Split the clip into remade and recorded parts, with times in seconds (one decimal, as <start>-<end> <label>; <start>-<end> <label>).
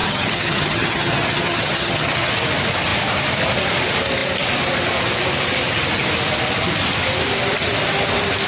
0.0-2.3 remade; 2.3-8.5 recorded